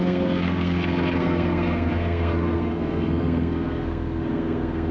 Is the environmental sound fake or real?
fake